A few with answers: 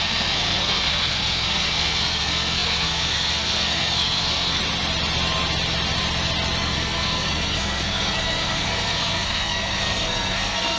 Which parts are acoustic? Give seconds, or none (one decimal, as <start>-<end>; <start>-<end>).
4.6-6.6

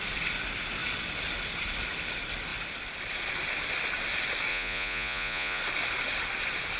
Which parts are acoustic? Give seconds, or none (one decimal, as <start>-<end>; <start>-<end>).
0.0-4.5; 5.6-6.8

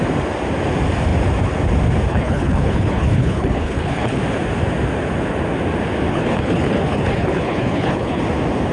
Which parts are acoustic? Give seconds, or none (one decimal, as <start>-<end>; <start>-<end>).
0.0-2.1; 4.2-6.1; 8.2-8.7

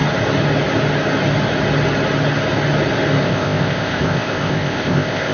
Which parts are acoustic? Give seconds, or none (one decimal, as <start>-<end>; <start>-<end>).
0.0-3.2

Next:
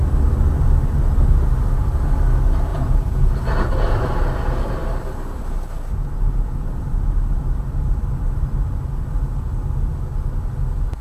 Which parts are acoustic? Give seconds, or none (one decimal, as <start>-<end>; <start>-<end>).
0.0-2.7; 3.3-11.0